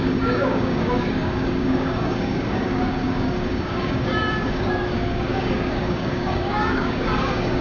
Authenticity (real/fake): fake